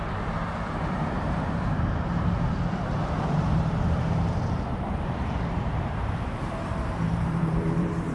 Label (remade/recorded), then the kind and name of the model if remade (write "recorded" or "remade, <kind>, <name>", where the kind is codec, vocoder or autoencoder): remade, vocoder, BigVGAN v2